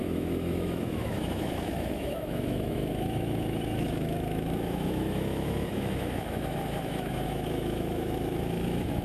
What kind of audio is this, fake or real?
fake